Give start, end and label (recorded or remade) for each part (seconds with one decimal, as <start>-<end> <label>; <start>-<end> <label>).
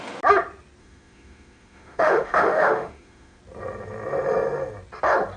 0.0-0.8 recorded; 0.8-3.4 remade; 3.4-5.4 recorded